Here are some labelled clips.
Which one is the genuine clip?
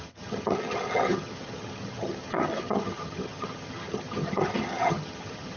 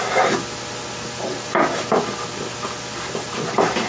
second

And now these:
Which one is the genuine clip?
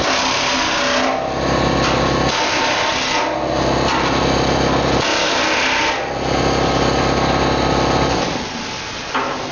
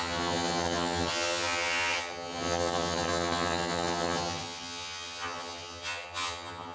first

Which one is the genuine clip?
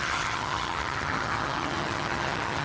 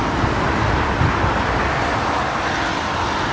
second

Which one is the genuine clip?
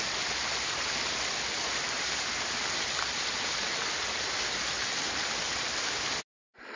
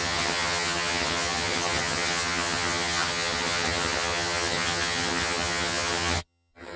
first